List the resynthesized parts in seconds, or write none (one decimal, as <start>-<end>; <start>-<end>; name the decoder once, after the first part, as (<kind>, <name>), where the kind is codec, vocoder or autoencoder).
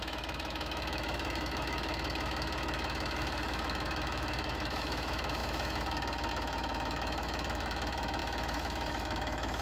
0.0-9.6 (autoencoder, DAC-VAE)